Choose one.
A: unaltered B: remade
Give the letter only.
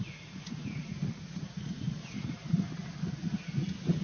B